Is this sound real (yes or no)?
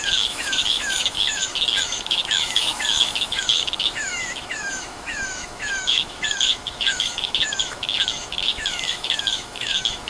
no